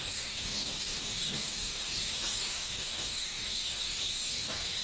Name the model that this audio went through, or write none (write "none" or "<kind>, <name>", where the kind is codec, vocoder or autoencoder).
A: codec, DAC